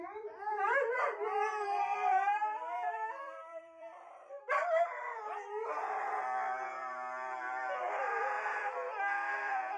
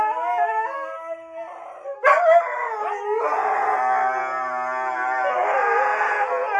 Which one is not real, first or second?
first